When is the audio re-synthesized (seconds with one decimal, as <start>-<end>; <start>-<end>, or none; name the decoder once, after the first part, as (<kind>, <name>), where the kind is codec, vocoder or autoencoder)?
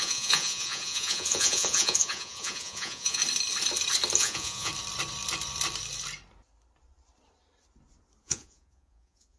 0.0-3.2 (vocoder, Vocos); 4.2-4.7; 8.2-9.4